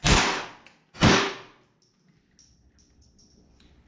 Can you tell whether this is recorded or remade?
recorded